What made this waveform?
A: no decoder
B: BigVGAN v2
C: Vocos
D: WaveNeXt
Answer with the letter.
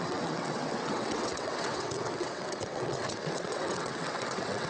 D